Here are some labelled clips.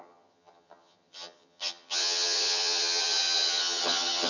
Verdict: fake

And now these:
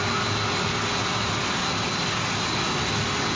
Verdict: real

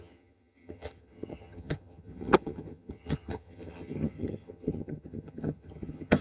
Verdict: fake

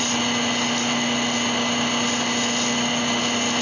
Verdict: real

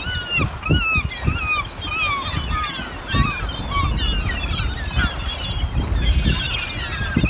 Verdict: real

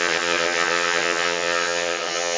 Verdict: fake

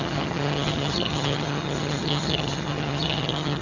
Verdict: fake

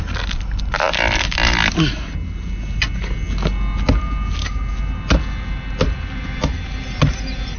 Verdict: real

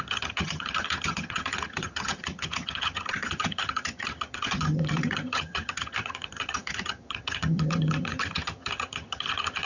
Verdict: fake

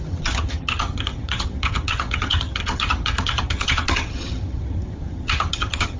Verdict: fake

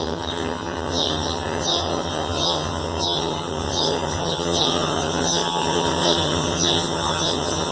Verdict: fake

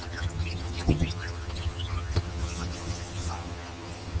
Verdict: fake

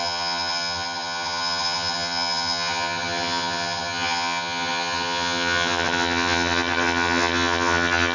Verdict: fake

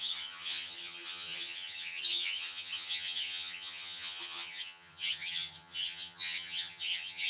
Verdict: fake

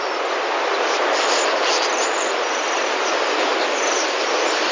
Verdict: real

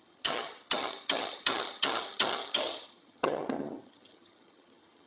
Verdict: fake